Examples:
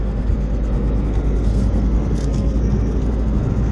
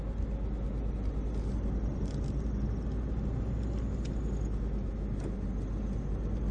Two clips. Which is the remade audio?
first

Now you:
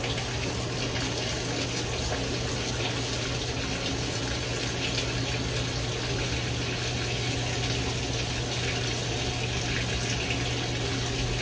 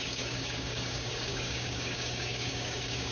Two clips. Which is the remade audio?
second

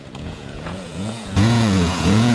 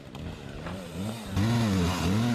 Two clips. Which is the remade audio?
first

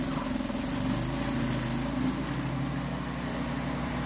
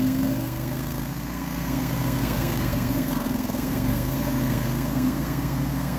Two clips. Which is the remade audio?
second